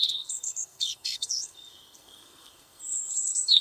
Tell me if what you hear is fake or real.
fake